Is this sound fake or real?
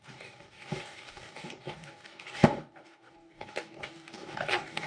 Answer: fake